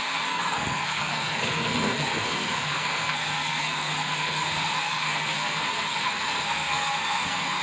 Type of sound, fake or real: fake